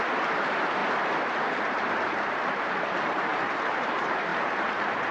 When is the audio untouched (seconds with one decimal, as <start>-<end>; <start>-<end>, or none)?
0.8-2.4